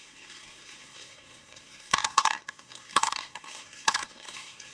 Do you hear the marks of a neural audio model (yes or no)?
yes